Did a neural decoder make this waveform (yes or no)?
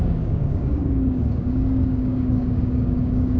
yes